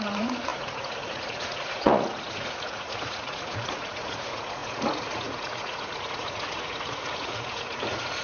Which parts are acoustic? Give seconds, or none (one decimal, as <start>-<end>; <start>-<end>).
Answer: none

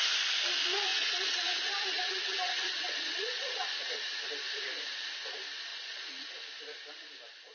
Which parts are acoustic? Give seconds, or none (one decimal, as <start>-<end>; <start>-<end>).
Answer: 0.0-0.9; 4.0-5.7; 6.3-7.5

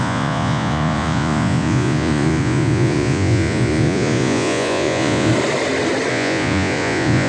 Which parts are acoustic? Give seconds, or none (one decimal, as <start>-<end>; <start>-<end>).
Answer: 5.3-6.1

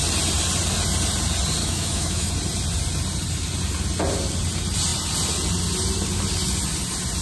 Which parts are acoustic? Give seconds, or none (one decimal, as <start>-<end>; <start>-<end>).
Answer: 0.0-1.6; 2.3-7.2